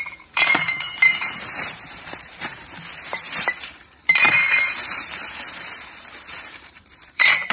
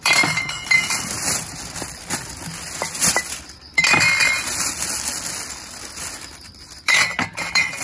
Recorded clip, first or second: second